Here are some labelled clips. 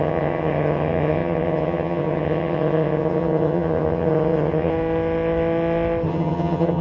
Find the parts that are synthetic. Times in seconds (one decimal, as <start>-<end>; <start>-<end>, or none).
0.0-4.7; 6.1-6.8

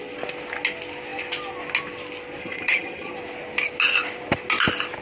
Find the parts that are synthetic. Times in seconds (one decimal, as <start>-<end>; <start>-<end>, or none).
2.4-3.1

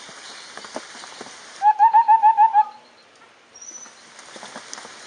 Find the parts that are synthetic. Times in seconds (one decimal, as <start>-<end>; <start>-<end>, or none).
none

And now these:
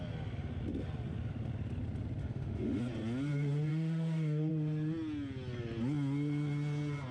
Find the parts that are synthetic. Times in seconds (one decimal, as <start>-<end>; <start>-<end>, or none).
2.2-2.8; 3.7-4.5

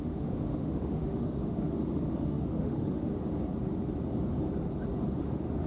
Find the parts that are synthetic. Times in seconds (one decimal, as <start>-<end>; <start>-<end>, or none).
0.0-3.1; 5.1-5.7

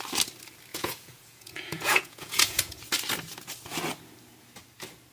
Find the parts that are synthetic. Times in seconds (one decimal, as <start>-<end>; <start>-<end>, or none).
0.7-2.8